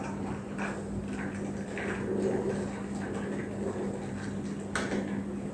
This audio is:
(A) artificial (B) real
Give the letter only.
B